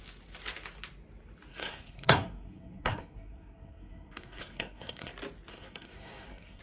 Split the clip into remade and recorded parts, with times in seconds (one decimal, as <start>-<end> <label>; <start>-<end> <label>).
0.0-1.5 recorded; 1.5-5.1 remade; 5.1-5.5 recorded; 5.5-6.6 remade